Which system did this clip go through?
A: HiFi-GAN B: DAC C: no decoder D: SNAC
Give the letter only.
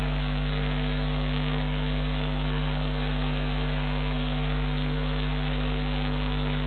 D